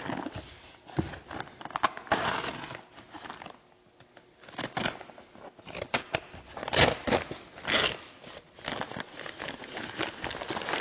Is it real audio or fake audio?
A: real